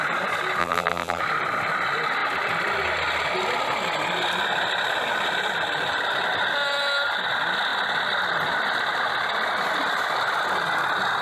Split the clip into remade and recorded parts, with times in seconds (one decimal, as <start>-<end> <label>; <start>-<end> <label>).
0.0-0.6 recorded; 0.6-1.2 remade; 1.2-11.2 recorded